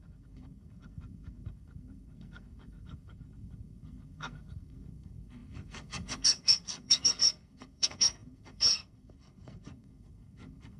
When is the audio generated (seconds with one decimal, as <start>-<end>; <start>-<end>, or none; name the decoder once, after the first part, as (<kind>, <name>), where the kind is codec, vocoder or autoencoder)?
0.0-10.8 (codec, SNAC)